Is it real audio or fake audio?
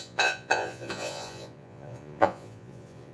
fake